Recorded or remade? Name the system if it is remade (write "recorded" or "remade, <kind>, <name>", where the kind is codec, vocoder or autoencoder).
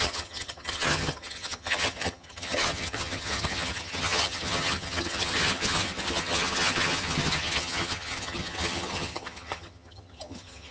remade, vocoder, HiFi-GAN